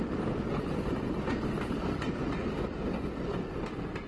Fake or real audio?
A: real